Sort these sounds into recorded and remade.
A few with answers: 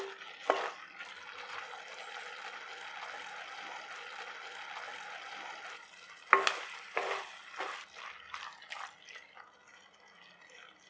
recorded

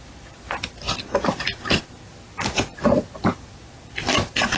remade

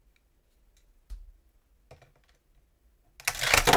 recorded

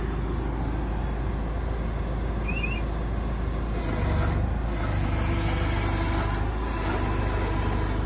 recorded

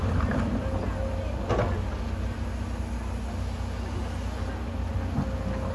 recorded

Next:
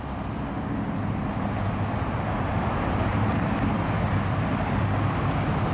recorded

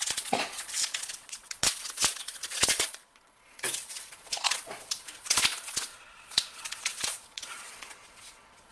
remade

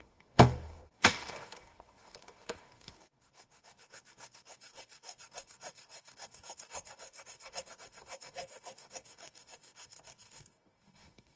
remade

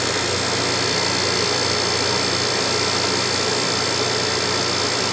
recorded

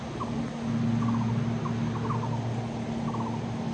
recorded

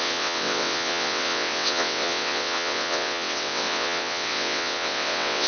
remade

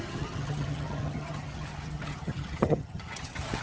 remade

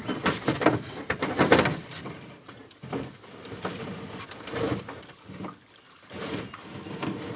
recorded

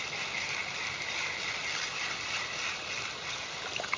recorded